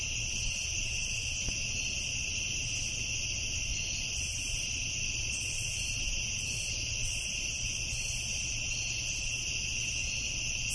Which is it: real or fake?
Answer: real